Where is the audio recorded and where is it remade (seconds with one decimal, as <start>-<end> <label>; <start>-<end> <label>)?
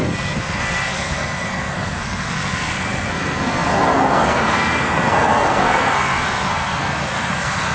0.0-7.7 remade